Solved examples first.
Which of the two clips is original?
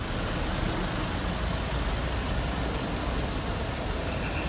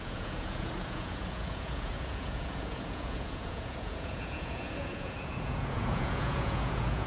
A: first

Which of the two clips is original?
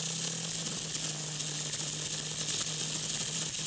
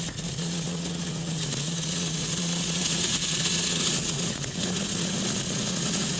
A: first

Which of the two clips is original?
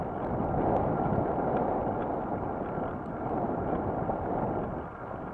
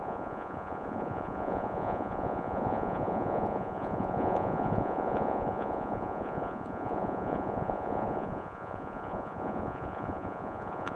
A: first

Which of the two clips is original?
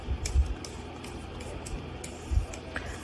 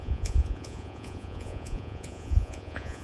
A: first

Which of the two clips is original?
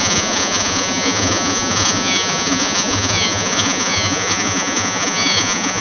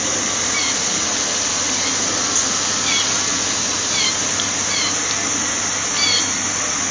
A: second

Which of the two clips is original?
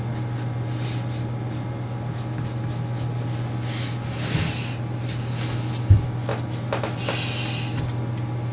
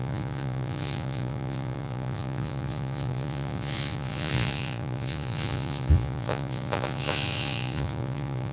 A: first